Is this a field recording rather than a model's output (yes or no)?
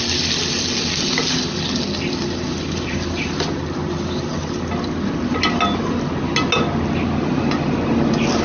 yes